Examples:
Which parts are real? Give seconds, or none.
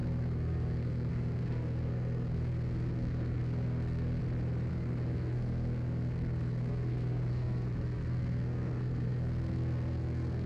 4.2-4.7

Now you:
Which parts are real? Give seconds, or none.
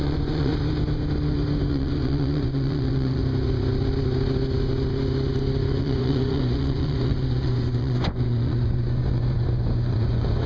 0.5-1.7; 3.2-5.8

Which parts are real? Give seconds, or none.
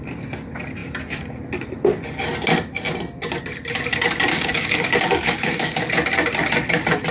0.0-4.3; 5.9-7.1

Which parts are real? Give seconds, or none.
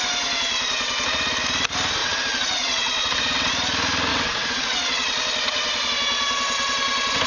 0.0-2.0; 3.5-4.1; 5.9-7.3